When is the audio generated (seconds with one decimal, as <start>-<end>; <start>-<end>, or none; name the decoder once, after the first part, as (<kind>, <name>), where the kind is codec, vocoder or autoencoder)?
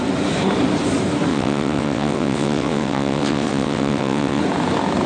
1.3-4.4 (vocoder, WaveNeXt)